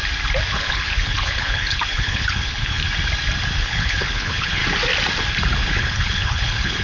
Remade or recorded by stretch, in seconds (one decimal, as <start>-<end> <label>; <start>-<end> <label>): 0.0-0.5 recorded; 0.5-2.8 remade; 2.8-3.6 recorded; 3.6-4.6 remade; 4.6-5.7 recorded; 5.7-6.8 remade